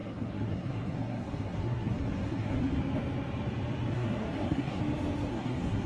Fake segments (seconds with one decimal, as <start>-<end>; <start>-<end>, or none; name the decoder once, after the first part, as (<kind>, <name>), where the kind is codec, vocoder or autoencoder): 0.0-2.8 (codec, SNAC); 3.9-4.8; 5.3-5.9